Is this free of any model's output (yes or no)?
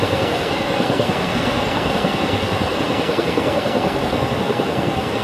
no